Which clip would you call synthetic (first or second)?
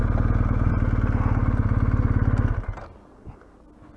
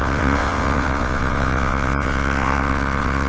second